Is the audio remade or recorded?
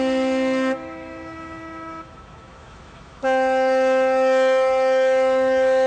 remade